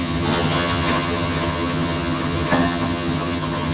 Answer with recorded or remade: remade